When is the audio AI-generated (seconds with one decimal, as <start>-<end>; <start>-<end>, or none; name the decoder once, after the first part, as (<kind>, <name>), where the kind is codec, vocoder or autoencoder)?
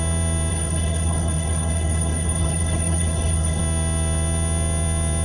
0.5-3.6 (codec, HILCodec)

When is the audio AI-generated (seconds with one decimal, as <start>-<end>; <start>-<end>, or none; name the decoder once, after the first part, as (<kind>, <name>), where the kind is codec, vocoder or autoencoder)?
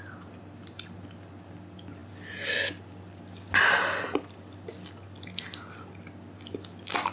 none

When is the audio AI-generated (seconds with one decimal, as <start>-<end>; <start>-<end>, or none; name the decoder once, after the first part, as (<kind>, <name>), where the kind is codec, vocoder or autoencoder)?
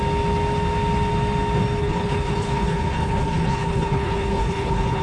1.8-5.0 (codec, HILCodec)